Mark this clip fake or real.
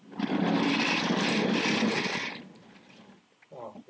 real